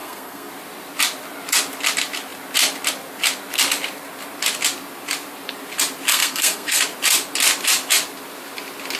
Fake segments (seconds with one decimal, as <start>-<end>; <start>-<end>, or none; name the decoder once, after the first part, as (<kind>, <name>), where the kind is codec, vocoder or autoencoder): 0.0-0.5 (codec, SNAC); 6.1-6.8